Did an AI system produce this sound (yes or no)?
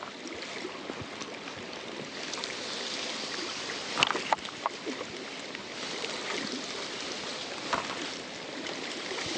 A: no